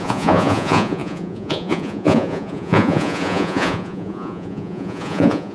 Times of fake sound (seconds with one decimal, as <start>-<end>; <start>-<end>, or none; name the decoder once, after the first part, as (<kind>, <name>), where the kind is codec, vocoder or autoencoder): 0.0-5.5 (vocoder, Vocos)